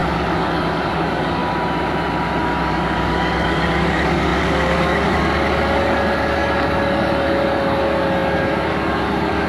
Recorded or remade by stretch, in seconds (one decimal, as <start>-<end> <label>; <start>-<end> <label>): 0.0-1.4 remade; 1.4-2.3 recorded; 2.3-9.5 remade